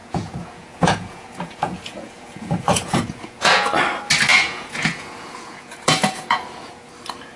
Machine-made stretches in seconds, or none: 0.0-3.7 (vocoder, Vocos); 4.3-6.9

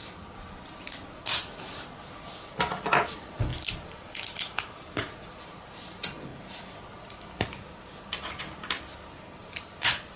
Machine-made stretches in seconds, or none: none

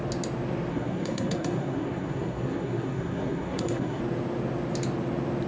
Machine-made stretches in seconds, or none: 0.7-4.0 (codec, SNAC)

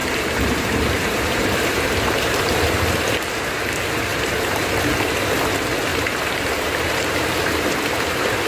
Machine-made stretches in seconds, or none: 0.0-2.8 (vocoder, BigVGAN v2); 4.1-4.8; 5.9-7.8